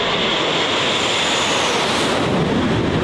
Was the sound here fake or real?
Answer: real